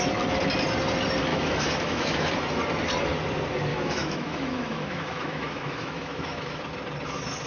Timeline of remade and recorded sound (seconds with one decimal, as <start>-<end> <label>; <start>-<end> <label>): 0.0-1.3 recorded; 1.3-2.3 remade; 2.3-3.7 recorded; 3.7-6.6 remade; 6.6-7.5 recorded